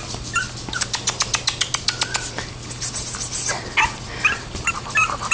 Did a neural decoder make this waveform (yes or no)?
no